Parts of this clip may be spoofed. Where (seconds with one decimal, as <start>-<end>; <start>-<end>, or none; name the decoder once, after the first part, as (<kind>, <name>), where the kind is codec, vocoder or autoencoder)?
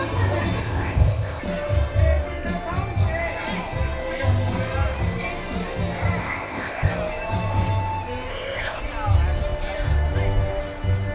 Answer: 0.6-1.4 (codec, ZipCodec); 6.2-6.9; 8.3-8.8